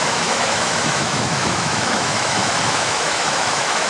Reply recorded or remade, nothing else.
remade